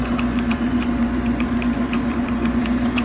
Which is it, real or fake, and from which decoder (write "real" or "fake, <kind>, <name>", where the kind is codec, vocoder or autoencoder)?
fake, vocoder, Vocos